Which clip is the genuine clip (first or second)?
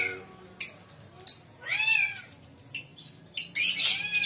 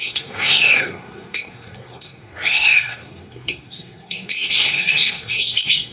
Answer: first